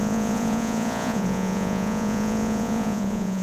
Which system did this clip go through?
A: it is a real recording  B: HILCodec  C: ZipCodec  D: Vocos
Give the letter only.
D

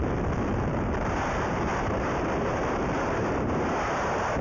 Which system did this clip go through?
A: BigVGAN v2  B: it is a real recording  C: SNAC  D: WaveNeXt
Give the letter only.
A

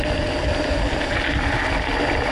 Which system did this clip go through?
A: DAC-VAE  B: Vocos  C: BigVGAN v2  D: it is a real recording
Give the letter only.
D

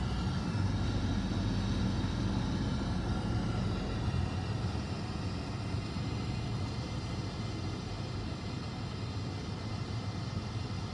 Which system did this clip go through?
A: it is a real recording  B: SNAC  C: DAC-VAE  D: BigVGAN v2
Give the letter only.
A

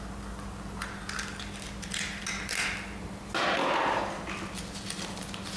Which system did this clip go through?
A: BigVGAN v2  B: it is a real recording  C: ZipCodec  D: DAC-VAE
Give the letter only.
B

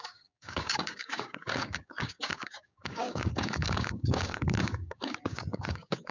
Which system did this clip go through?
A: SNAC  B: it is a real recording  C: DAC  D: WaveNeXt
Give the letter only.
C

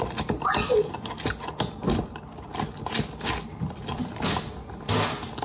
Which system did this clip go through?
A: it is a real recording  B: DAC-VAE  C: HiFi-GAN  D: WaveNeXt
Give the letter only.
A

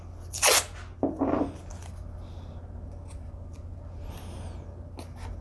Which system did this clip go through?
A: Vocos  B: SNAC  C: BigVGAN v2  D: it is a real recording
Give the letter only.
D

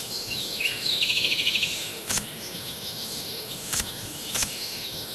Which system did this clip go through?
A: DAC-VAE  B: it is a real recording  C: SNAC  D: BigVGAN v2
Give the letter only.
A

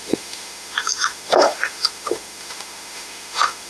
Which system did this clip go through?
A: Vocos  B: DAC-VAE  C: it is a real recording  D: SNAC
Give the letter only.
B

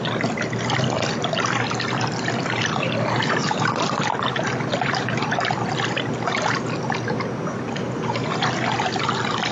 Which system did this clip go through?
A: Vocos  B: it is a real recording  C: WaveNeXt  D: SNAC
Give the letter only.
B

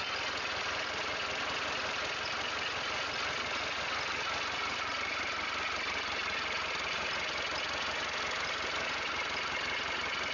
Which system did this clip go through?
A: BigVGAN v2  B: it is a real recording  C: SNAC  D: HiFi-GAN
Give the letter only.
B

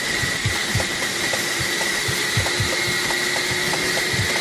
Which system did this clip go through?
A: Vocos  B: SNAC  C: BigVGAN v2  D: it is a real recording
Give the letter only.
D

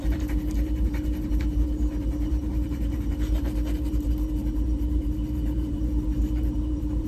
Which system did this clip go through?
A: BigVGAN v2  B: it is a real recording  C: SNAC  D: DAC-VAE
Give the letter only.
A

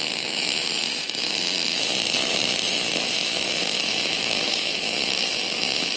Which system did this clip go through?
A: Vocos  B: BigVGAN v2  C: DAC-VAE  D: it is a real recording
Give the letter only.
C